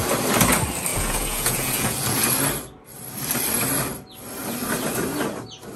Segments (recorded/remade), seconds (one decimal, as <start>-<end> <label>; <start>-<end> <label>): 0.0-0.9 recorded; 0.9-2.3 remade; 2.3-5.8 recorded